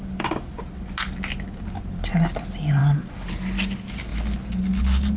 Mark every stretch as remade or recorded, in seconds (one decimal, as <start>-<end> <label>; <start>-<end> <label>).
0.0-5.2 recorded